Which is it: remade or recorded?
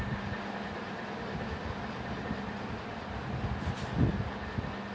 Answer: recorded